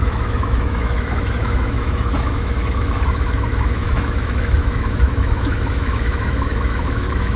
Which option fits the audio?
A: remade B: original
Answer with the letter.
A